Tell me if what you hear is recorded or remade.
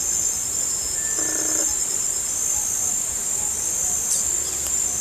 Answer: recorded